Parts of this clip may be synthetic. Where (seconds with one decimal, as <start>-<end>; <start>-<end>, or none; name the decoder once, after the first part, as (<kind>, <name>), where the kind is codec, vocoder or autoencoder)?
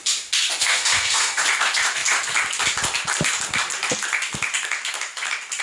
0.6-1.4 (codec, SNAC)